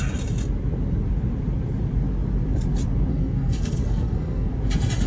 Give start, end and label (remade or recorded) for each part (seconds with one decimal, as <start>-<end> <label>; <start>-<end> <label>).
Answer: 0.0-3.1 recorded; 3.1-4.5 remade; 4.5-5.1 recorded